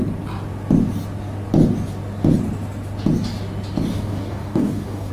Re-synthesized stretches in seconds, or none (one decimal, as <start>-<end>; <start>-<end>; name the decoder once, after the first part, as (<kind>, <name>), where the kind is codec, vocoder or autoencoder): 3.9-5.1 (codec, DAC)